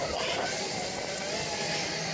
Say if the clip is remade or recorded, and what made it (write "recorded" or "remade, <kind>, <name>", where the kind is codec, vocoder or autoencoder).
recorded